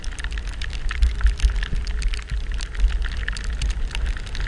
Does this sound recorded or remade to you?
recorded